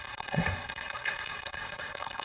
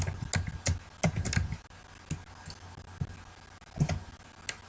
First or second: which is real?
second